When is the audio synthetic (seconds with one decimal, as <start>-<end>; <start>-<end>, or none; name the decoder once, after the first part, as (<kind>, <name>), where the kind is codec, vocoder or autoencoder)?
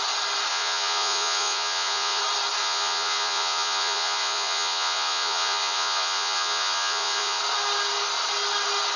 0.5-2.2 (vocoder, Vocos); 2.6-7.4